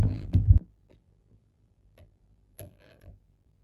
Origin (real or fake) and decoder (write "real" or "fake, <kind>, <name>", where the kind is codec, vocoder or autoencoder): fake, vocoder, BigVGAN v2